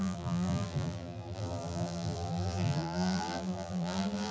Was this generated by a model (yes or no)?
yes